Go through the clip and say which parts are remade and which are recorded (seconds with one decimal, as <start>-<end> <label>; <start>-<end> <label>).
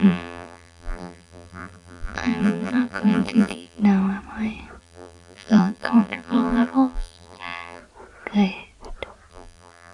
0.0-3.8 remade; 3.8-4.8 recorded; 4.8-7.8 remade; 7.8-9.3 recorded; 9.3-9.9 remade